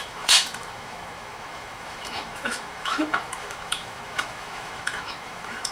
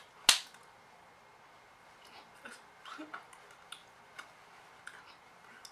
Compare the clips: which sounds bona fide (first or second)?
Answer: second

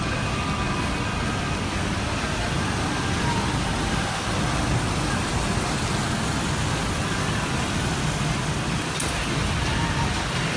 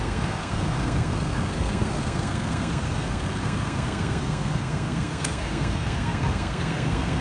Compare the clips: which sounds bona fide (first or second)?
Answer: first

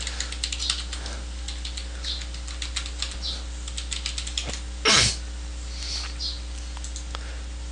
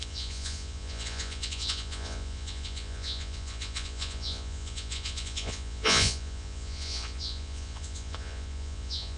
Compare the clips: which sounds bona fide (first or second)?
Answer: first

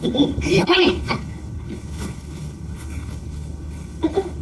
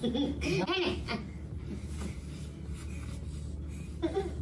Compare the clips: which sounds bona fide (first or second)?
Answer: second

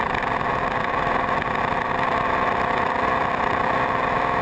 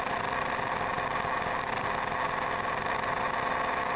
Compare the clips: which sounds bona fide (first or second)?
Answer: second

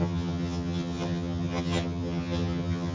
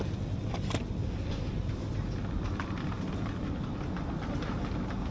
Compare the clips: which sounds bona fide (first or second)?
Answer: second